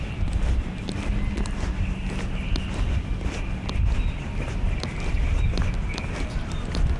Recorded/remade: recorded